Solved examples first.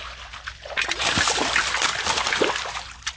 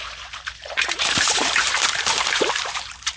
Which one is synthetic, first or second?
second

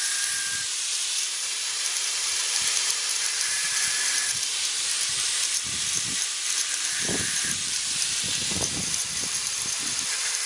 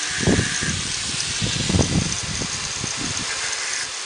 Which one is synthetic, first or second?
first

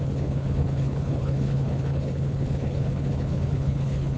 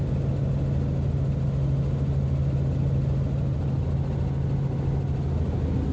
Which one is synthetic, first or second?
first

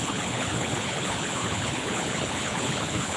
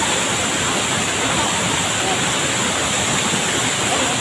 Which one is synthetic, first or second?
first